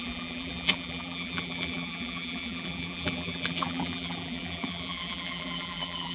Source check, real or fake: fake